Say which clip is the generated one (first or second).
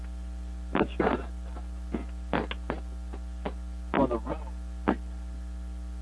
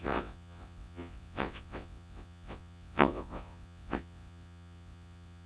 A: second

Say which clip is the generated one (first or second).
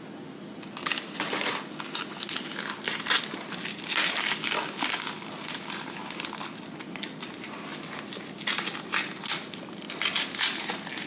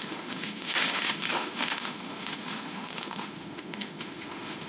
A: second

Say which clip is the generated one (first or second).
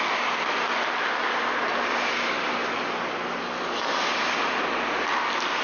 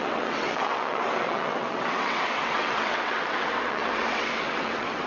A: second